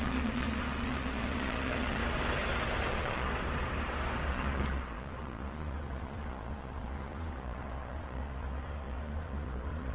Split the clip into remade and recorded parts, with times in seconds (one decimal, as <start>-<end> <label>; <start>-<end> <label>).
0.0-2.0 remade; 2.0-2.9 recorded; 2.9-3.3 remade; 3.3-4.3 recorded; 4.3-9.9 remade